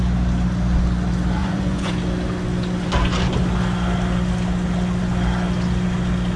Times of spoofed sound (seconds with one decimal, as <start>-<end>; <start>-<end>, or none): 1.4-1.9